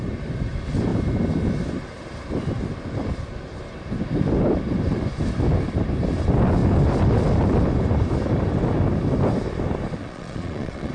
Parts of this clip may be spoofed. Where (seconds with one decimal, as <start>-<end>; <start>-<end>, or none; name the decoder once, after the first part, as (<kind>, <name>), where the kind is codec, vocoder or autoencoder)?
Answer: 10.0-10.9 (vocoder, Vocos)